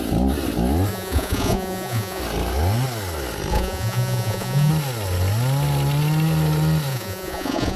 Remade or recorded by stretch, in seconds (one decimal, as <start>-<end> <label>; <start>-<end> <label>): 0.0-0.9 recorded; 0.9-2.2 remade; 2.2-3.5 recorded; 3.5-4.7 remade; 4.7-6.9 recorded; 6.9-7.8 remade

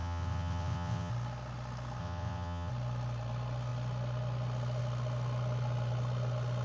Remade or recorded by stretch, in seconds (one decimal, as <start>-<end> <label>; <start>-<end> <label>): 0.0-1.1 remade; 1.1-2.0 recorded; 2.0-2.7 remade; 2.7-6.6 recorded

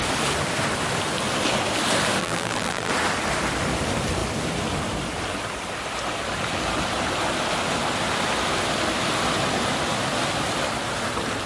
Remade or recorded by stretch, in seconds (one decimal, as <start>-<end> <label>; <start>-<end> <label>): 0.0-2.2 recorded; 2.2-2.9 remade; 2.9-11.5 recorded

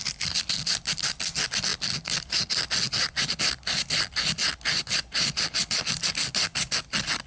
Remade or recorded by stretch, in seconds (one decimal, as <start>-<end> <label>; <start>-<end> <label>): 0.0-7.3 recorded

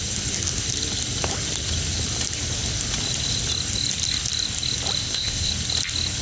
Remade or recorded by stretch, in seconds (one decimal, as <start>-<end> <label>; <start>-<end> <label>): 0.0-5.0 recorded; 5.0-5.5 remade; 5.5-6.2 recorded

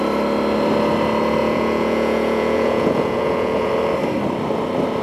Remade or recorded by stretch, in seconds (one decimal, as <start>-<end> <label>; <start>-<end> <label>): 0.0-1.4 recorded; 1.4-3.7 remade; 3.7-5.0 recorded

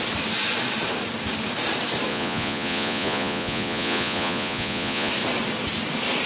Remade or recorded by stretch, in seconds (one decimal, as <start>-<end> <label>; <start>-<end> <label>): 0.0-2.1 recorded; 2.1-5.1 remade; 5.1-6.3 recorded

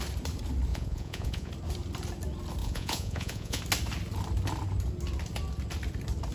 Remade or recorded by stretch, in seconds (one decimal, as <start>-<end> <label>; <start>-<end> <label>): 0.0-0.7 recorded; 0.7-1.5 remade; 1.5-2.6 recorded; 2.6-3.6 remade; 3.6-6.3 recorded